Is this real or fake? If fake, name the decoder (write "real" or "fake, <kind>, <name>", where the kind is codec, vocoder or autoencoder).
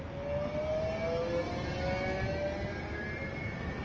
real